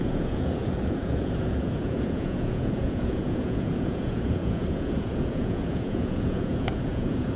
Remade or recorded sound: remade